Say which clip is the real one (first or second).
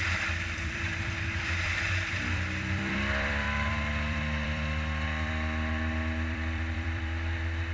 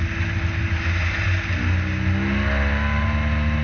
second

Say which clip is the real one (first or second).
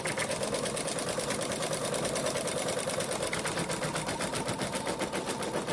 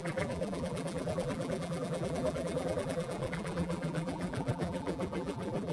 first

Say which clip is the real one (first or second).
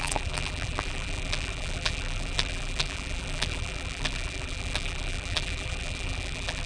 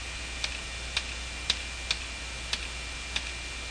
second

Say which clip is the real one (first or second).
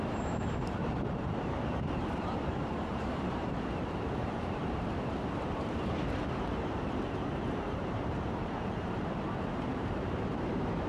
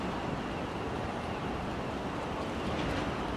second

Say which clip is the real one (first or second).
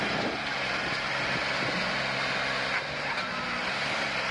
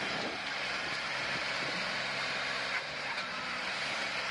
first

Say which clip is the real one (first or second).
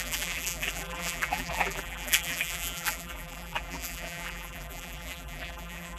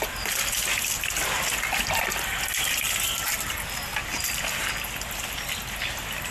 second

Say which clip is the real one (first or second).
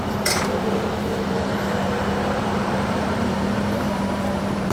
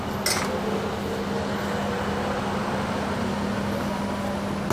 second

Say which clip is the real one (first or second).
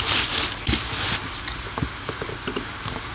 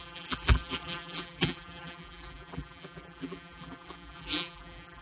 first